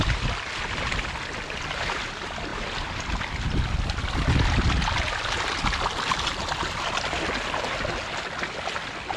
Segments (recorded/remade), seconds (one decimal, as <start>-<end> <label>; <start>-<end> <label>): 0.0-9.2 recorded